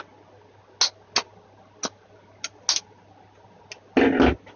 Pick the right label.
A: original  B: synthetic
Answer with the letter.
A